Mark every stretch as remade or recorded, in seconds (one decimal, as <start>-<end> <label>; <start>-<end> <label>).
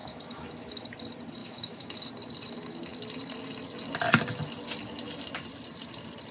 0.0-0.7 remade; 0.7-1.4 recorded; 1.4-2.1 remade; 2.1-6.3 recorded